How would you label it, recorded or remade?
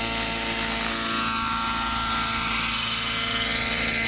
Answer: recorded